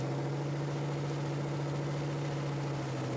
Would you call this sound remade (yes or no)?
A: no